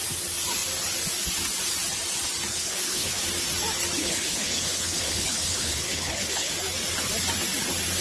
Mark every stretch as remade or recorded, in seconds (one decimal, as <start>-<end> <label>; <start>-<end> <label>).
0.0-2.5 recorded; 2.5-3.2 remade; 3.2-4.0 recorded; 4.0-6.5 remade; 6.5-8.0 recorded